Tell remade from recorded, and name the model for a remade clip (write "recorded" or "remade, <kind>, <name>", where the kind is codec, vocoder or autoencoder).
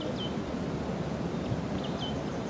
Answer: recorded